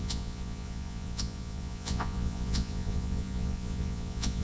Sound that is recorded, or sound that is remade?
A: remade